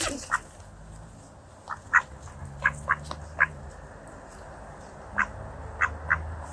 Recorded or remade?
recorded